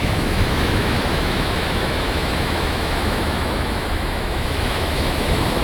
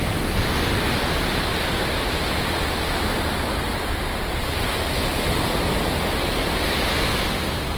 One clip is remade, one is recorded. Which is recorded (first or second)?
second